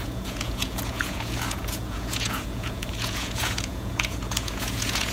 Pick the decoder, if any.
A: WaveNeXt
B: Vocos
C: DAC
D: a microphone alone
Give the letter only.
B